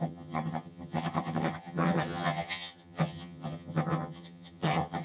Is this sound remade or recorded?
remade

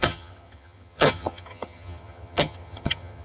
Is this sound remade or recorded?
remade